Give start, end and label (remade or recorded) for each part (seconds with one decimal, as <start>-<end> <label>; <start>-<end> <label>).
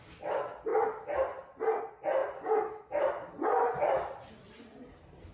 0.0-5.3 recorded